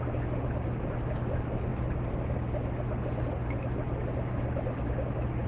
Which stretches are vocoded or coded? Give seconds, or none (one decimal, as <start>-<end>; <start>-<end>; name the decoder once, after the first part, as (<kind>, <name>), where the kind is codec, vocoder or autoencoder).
none